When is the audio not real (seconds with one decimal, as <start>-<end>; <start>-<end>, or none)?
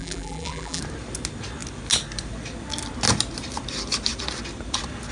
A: 0.0-0.8